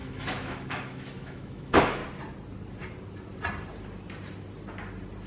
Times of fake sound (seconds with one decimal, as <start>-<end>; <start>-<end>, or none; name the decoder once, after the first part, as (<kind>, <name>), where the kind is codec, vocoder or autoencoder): 0.0-2.0 (autoencoder, DAC-VAE)